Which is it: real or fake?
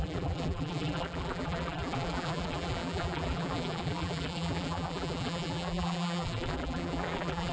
fake